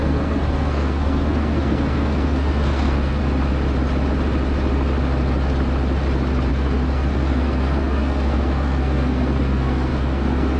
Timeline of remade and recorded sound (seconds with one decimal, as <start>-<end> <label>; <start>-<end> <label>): 0.0-3.2 remade; 3.2-6.5 recorded; 6.5-10.6 remade